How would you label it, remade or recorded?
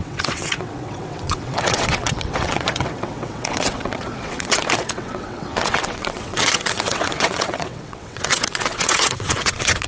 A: remade